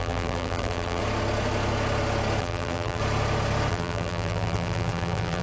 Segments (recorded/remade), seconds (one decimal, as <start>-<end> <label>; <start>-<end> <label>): 0.0-1.0 remade; 1.0-2.4 recorded; 2.4-3.0 remade; 3.0-3.7 recorded; 3.7-5.4 remade

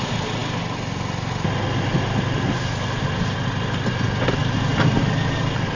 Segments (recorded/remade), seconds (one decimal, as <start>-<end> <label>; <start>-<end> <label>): 0.0-4.4 recorded; 4.4-5.0 remade; 5.0-5.8 recorded